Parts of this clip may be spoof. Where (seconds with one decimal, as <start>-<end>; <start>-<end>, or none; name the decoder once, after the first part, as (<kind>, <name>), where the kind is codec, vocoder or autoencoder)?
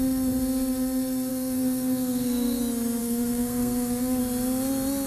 1.3-2.6 (codec, SNAC); 3.0-4.2